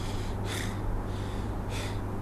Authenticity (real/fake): real